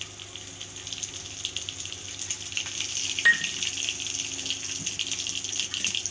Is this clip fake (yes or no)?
no